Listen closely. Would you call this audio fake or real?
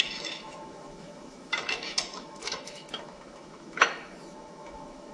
fake